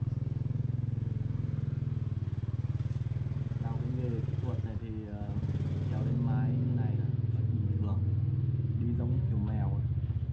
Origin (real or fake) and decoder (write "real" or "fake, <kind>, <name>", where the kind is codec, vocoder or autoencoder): real